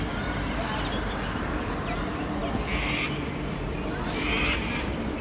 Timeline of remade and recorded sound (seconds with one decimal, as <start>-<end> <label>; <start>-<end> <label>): 0.0-5.2 recorded